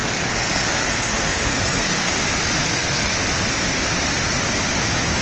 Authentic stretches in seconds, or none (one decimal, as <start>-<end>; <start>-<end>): 2.1-2.6; 3.1-5.2